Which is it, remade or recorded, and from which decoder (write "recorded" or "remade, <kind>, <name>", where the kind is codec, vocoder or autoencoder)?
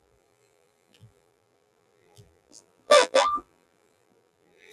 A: remade, vocoder, BigVGAN v2